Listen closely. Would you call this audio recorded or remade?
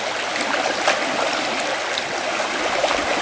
recorded